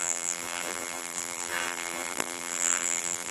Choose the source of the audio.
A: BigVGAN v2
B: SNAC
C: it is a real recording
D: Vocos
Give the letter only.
A